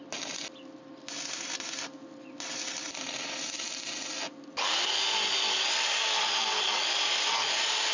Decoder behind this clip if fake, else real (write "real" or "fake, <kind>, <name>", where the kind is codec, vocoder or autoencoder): real